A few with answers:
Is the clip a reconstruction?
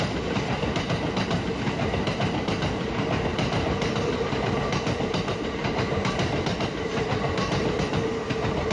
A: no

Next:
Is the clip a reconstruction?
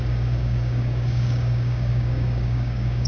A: yes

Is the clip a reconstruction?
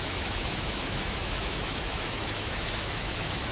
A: yes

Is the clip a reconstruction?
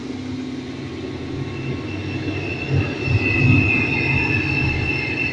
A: no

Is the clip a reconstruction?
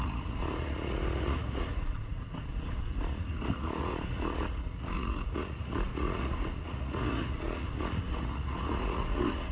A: yes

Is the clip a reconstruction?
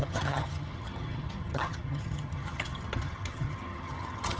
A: yes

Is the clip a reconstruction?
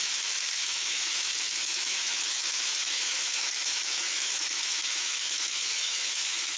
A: yes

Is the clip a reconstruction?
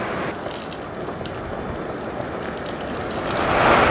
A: no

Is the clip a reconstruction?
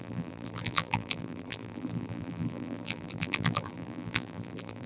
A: yes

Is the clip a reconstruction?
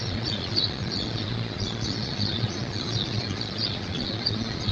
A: yes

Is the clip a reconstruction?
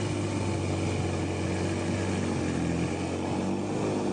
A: no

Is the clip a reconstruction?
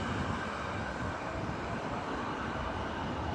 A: no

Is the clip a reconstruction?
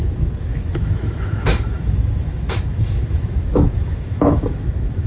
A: yes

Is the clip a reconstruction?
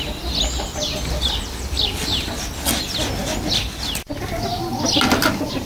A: no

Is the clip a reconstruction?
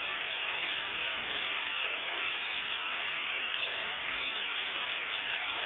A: yes